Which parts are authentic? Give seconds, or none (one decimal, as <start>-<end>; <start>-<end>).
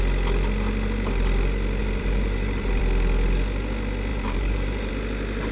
0.0-1.8; 2.8-4.1; 4.9-5.5